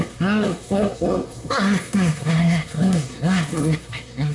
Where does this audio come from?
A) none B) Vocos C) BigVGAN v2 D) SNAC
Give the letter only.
D